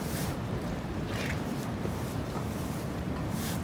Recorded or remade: remade